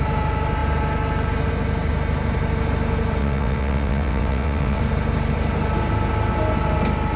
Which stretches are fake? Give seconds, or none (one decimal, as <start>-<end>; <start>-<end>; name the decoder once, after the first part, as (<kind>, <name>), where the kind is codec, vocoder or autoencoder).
3.2-4.8 (vocoder, WaveNeXt)